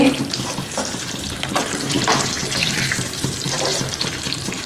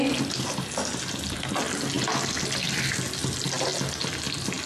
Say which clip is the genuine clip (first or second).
second